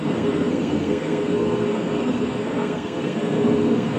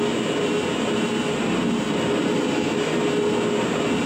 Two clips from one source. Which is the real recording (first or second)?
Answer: second